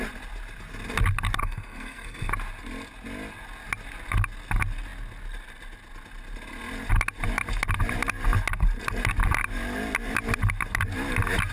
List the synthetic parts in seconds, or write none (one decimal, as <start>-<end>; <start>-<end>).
1.4-2.3